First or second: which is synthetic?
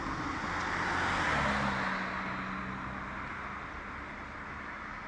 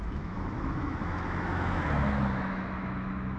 second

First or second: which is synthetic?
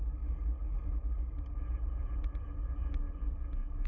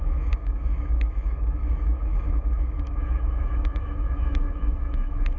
second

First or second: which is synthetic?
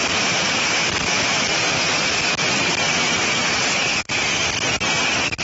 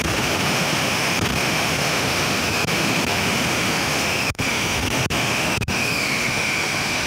second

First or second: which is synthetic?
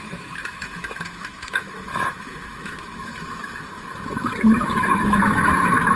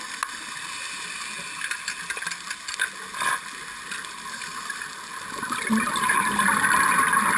first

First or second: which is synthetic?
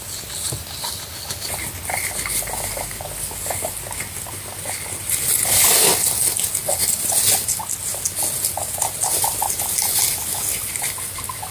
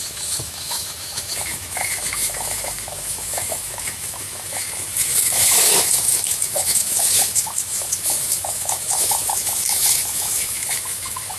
second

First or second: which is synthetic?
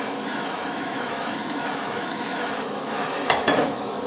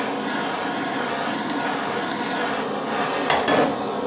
first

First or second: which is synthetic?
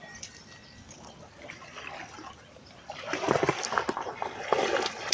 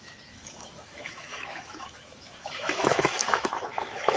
second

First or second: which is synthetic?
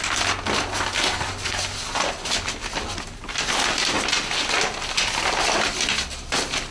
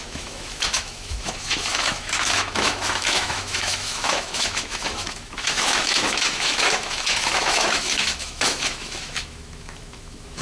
second